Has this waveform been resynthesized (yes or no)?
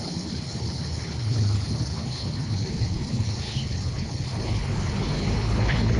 yes